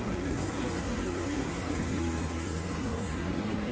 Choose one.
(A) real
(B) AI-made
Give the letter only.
B